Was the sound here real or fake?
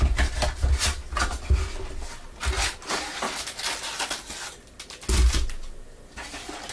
real